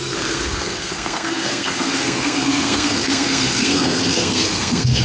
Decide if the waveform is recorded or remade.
remade